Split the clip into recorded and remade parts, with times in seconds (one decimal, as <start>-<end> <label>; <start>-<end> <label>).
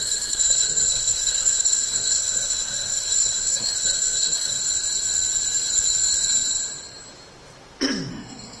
0.0-4.6 remade; 4.6-8.1 recorded; 8.1-8.6 remade